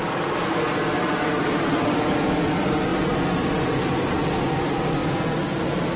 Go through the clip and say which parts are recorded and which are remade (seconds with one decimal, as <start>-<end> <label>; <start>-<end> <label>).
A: 0.0-6.0 recorded